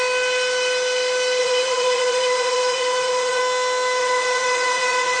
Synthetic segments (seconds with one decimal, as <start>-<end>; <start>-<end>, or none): 1.4-3.4; 4.0-5.2